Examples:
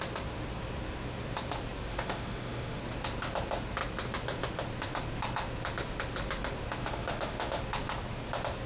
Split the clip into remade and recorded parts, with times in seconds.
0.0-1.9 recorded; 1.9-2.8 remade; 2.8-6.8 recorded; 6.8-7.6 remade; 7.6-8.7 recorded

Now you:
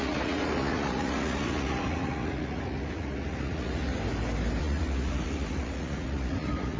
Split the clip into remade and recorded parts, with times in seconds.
0.0-4.0 remade; 4.0-4.6 recorded; 4.6-6.8 remade

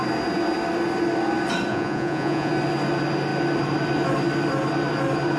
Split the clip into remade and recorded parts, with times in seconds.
0.0-1.7 recorded; 1.7-2.5 remade; 2.5-5.4 recorded

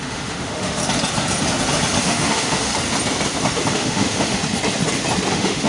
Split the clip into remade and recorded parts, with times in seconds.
0.0-0.8 remade; 0.8-2.0 recorded; 2.0-2.7 remade; 2.7-3.7 recorded; 3.7-4.4 remade; 4.4-5.3 recorded; 5.3-5.7 remade

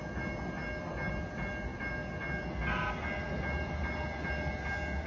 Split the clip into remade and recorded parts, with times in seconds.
0.0-5.1 recorded

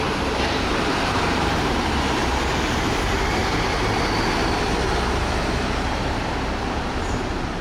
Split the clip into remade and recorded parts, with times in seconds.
0.0-3.4 remade; 3.4-4.6 recorded; 4.6-7.6 remade

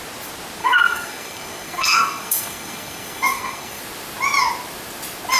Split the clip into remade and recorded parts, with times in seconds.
0.0-0.6 recorded; 0.6-3.8 remade; 3.8-5.4 recorded